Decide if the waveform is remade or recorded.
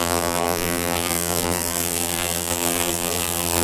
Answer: remade